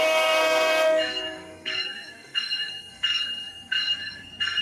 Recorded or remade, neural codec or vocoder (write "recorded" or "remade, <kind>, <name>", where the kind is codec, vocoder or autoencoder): remade, codec, SNAC